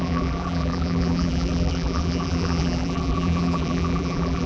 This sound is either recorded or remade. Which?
remade